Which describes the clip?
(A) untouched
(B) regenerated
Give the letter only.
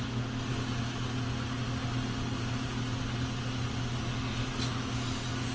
A